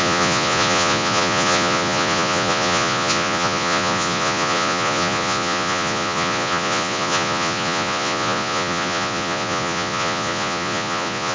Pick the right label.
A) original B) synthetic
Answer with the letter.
B